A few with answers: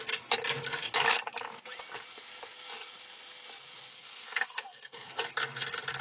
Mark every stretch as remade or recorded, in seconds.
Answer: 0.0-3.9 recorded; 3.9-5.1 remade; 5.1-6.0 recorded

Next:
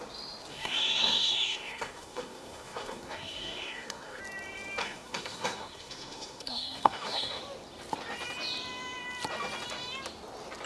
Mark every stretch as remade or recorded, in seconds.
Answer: 0.0-0.5 recorded; 0.5-4.2 remade; 4.2-4.8 recorded; 4.8-7.4 remade; 7.4-10.7 recorded

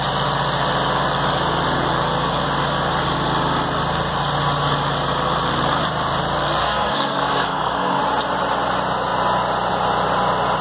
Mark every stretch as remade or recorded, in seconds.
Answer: 0.0-6.6 recorded; 6.6-8.0 remade; 8.0-10.6 recorded

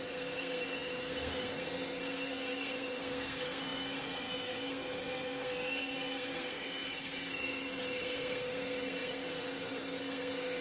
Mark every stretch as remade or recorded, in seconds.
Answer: 0.0-10.6 remade

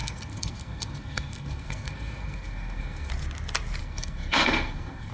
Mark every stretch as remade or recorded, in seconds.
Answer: 0.0-3.1 remade; 3.1-3.8 recorded; 3.8-5.1 remade

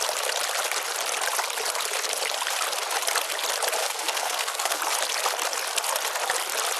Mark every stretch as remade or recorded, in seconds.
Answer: 0.0-3.8 recorded; 3.8-4.8 remade; 4.8-6.8 recorded

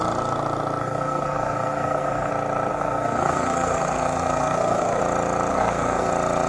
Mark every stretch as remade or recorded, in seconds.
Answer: 0.0-0.8 recorded; 0.8-2.3 remade; 2.3-2.7 recorded; 2.7-5.0 remade; 5.0-5.5 recorded; 5.5-6.1 remade; 6.1-6.5 recorded